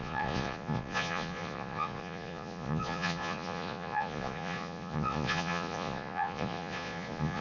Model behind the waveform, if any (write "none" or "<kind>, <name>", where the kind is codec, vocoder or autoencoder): vocoder, Vocos